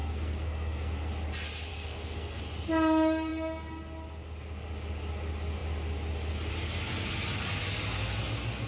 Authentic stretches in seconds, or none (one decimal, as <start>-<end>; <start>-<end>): 1.1-1.7; 2.4-8.7